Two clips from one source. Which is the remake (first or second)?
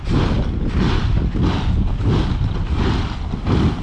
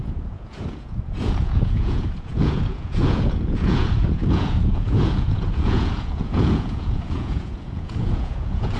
second